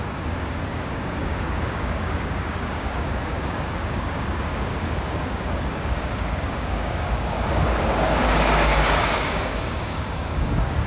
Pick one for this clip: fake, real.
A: fake